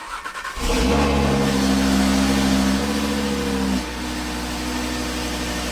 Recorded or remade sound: recorded